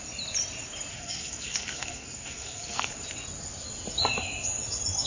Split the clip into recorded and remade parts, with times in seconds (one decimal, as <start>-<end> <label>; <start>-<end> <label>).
0.0-0.9 recorded; 0.9-2.9 remade; 2.9-5.1 recorded